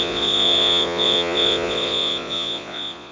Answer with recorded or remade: remade